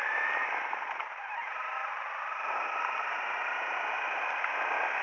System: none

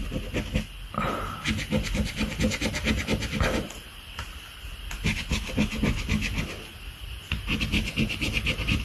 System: none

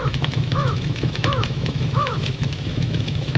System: autoencoder, DAC-VAE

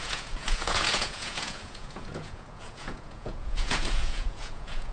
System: vocoder, Vocos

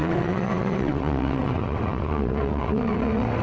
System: vocoder, WaveNeXt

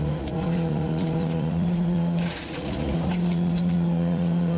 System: vocoder, Vocos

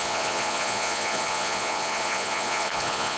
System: vocoder, Vocos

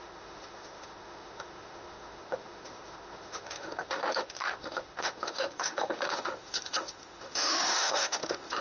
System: autoencoder, DAC-VAE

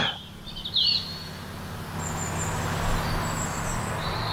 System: none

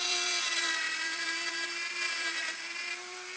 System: vocoder, BigVGAN v2